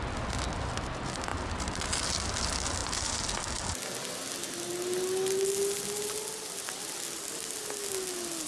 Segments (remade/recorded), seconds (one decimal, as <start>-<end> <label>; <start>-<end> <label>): 0.0-1.3 recorded; 1.3-2.2 remade; 2.2-8.5 recorded